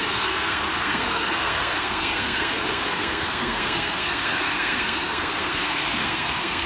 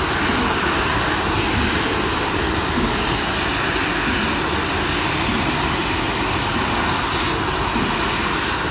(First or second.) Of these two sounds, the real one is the second